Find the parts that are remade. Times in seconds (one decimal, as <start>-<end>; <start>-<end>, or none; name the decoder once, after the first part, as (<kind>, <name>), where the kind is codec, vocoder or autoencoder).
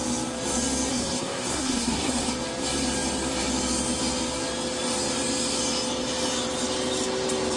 0.9-2.3 (codec, SNAC)